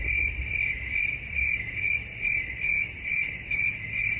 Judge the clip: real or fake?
real